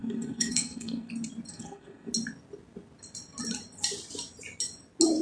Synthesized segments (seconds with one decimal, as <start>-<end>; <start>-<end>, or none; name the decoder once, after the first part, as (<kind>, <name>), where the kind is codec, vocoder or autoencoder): 0.0-1.1 (codec, SNAC); 1.5-2.1